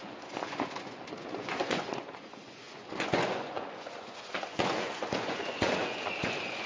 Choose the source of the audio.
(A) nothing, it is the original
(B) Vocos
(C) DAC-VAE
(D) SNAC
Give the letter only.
B